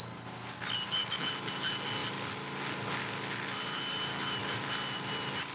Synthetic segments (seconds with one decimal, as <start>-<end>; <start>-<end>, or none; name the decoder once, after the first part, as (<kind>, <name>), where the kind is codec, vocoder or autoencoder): none